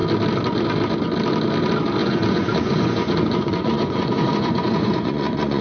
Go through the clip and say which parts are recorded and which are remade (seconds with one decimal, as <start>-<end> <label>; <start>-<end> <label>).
0.0-2.0 recorded; 2.0-5.6 remade